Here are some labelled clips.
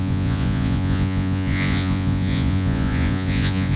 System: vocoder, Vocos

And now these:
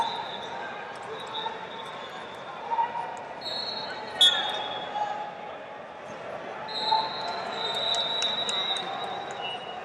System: none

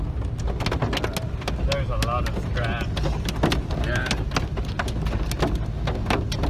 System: none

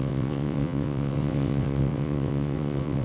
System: vocoder, WaveNeXt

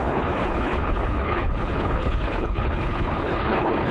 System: codec, HILCodec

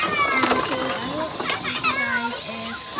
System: none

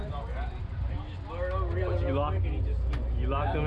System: none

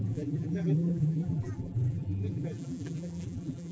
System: vocoder, BigVGAN v2